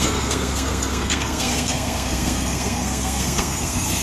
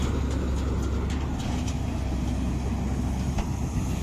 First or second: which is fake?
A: first